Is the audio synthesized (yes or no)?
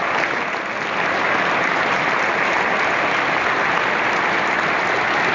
no